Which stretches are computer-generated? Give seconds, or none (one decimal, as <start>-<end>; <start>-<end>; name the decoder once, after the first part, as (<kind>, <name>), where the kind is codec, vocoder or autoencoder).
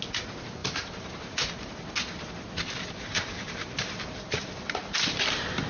0.6-1.2 (vocoder, BigVGAN v2); 3.1-5.7